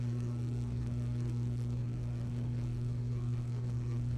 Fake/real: fake